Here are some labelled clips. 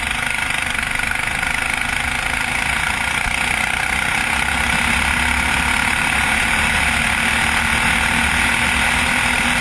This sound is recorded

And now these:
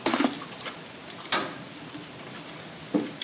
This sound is remade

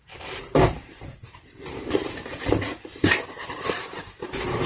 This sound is remade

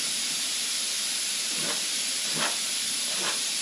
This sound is remade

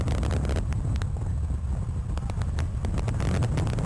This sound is recorded